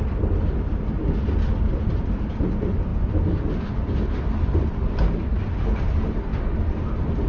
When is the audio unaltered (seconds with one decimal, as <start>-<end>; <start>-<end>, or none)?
6.3-7.3